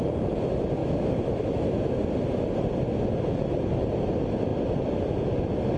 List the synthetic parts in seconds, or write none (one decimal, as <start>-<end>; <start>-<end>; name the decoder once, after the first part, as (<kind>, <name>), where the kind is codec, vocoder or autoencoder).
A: 0.8-2.0 (autoencoder, DAC-VAE)